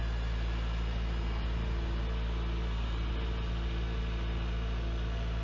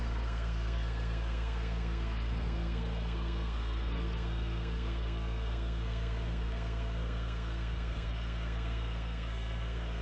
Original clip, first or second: first